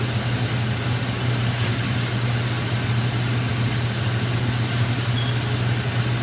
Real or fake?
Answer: real